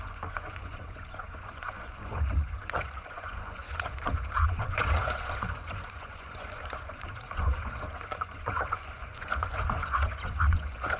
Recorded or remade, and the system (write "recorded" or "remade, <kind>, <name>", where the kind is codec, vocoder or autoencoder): remade, vocoder, Vocos